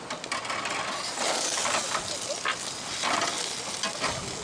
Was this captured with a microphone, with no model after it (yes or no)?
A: yes